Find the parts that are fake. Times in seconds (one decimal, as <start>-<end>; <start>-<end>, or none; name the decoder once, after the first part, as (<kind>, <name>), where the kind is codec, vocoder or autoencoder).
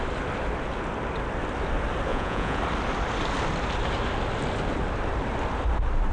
2.1-2.6 (vocoder, Vocos)